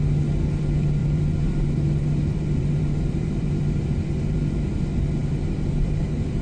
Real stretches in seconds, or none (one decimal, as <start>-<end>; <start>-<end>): 0.0-1.0; 4.7-5.2; 5.9-6.4